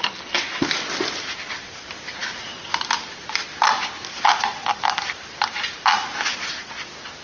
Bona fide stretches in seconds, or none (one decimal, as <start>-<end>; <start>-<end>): 0.0-7.2